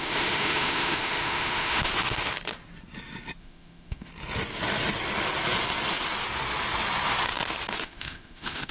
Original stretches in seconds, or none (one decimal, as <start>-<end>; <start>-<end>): 1.9-3.4; 4.1-7.7